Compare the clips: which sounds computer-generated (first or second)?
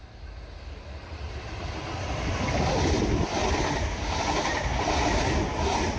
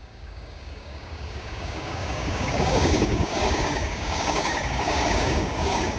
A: second